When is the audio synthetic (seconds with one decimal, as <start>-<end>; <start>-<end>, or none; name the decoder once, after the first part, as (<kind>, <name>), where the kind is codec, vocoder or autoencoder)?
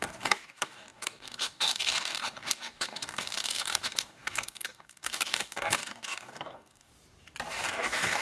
0.0-6.9 (codec, DAC); 7.5-8.2